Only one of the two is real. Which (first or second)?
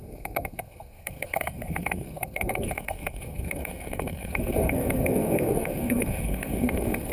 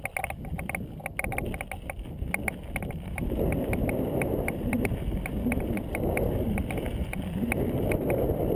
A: second